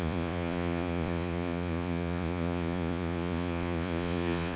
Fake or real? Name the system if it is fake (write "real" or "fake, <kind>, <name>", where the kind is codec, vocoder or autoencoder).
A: fake, vocoder, Vocos